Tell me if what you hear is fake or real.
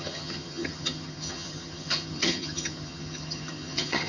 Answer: fake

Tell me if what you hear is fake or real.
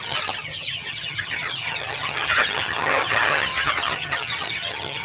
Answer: fake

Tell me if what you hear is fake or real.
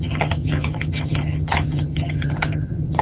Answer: fake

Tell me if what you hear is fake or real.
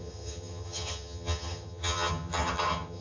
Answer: fake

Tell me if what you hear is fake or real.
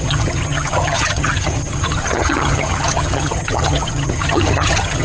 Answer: fake